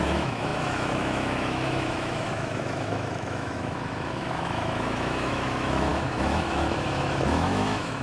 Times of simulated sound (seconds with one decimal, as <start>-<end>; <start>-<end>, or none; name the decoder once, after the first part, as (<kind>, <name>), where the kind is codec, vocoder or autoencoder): 0.0-8.0 (autoencoder, DAC-VAE)